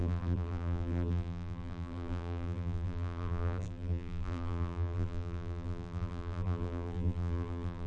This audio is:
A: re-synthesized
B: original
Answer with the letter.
A